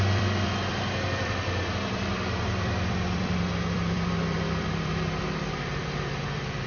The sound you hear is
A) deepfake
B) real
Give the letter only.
A